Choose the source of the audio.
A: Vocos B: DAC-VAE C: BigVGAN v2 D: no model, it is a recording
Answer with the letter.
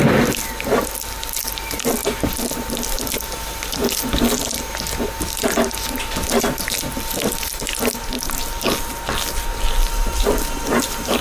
D